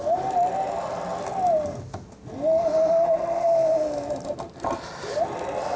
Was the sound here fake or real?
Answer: real